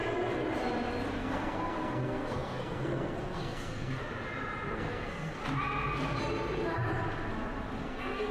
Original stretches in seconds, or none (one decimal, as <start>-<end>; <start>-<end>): 0.0-1.2; 4.0-4.7; 5.4-7.8